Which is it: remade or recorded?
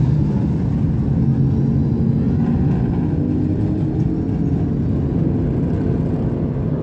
recorded